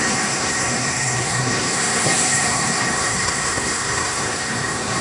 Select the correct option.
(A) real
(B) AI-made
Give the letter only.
B